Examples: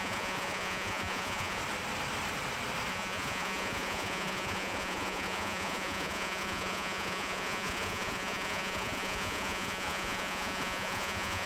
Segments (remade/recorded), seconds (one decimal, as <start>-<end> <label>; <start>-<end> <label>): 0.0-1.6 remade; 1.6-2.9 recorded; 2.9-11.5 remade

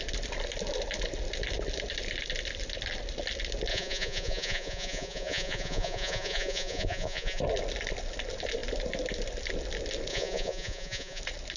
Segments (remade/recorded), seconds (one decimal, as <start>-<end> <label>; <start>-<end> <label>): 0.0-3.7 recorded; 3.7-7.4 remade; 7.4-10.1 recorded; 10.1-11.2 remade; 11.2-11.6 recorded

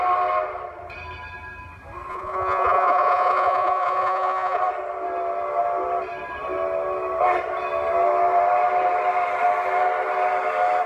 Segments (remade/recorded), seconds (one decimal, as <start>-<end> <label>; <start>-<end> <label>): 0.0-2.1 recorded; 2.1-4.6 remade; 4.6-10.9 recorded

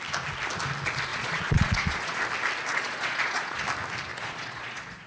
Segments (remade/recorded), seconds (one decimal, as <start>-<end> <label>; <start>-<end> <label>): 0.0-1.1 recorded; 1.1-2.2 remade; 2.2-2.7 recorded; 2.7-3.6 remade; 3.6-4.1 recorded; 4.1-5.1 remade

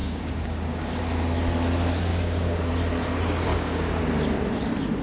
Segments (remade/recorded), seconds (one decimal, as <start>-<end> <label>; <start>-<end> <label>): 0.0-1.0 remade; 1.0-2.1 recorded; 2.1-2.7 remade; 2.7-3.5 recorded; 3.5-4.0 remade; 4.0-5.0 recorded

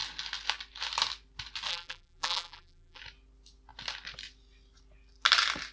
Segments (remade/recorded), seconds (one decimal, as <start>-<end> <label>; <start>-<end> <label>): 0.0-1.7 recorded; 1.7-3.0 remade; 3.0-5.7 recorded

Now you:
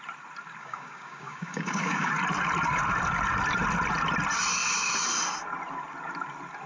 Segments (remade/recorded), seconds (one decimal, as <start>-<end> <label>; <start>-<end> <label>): 0.0-0.6 recorded; 0.6-2.1 remade; 2.1-6.7 recorded

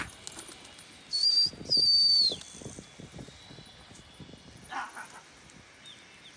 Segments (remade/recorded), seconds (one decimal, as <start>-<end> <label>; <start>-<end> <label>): 0.0-6.4 recorded